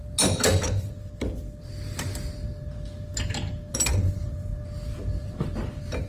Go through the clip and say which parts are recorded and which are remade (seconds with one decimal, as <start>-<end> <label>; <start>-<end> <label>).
0.0-3.7 recorded; 3.7-4.5 remade; 4.5-5.2 recorded; 5.2-6.1 remade